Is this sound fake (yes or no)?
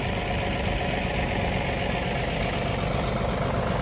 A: no